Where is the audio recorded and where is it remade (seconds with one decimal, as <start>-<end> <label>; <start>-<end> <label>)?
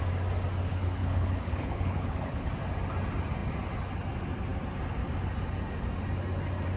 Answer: 0.0-0.7 recorded; 0.7-2.5 remade; 2.5-6.8 recorded